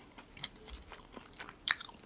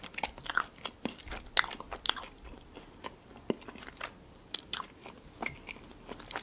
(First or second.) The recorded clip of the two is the second